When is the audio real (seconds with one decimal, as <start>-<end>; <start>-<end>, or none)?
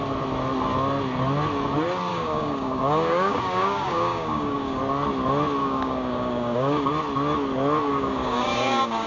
0.0-2.1; 4.8-5.6; 6.9-7.9